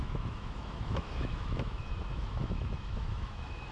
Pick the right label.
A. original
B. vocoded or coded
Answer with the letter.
B